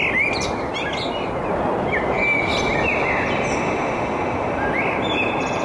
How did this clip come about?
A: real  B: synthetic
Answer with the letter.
A